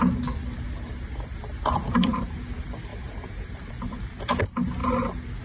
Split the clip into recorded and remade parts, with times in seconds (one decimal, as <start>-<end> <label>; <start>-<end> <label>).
0.0-2.9 recorded; 2.9-3.7 remade; 3.7-5.4 recorded